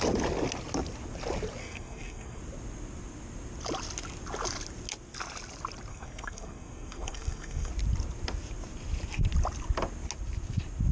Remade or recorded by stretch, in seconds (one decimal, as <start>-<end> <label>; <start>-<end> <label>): 0.0-1.6 recorded; 1.6-2.4 remade; 2.4-5.9 recorded; 5.9-7.7 remade; 7.7-10.9 recorded